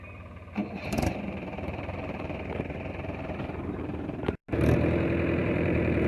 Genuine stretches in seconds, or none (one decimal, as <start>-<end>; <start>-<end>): 4.4-5.4